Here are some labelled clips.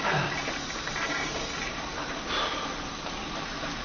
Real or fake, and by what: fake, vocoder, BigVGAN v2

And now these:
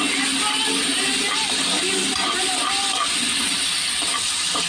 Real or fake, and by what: real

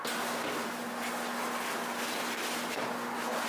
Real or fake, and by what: real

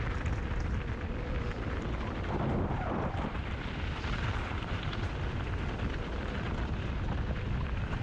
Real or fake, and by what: fake, vocoder, BigVGAN v2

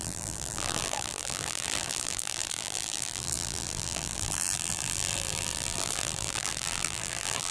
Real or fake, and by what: fake, vocoder, BigVGAN v2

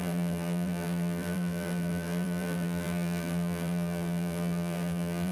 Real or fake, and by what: fake, vocoder, BigVGAN v2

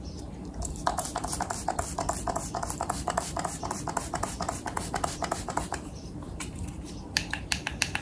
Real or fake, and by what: fake, vocoder, BigVGAN v2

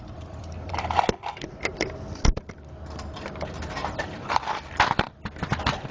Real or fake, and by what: fake, vocoder, BigVGAN v2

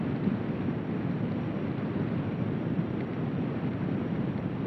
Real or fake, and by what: fake, vocoder, BigVGAN v2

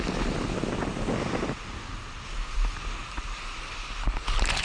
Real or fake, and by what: real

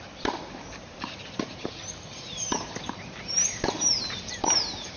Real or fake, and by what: fake, vocoder, BigVGAN v2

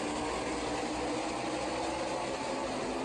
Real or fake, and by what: real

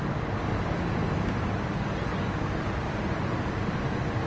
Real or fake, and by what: real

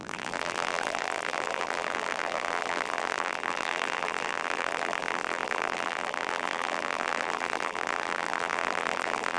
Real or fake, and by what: fake, vocoder, BigVGAN v2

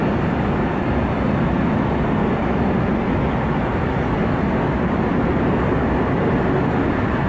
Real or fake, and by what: real